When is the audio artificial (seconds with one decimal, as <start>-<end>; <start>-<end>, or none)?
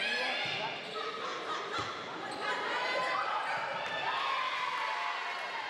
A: none